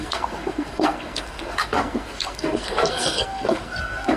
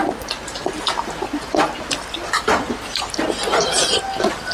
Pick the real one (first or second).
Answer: second